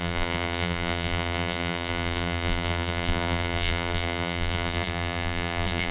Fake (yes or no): yes